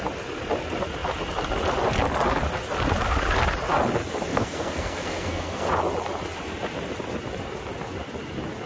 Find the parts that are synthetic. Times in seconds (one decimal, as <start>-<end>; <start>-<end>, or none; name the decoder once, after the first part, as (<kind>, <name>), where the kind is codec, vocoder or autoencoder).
4.3-5.7 (codec, SNAC)